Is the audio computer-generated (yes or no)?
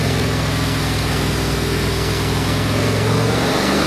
yes